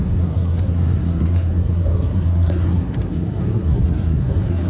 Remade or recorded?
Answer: remade